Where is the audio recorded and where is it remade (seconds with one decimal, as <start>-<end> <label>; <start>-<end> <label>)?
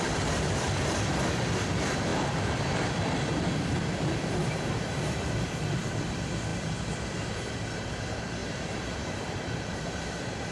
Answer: 0.0-10.5 remade